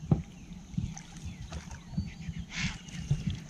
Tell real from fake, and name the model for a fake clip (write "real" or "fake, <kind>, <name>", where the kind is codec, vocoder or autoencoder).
real